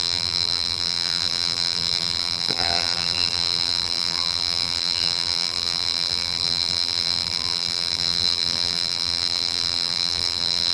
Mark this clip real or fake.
fake